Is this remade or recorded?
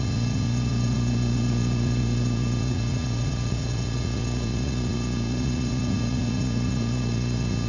remade